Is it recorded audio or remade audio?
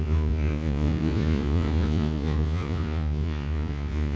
remade